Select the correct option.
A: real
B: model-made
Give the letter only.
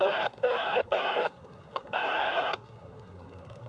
B